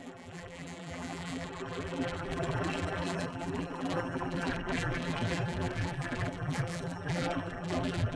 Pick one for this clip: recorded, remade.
remade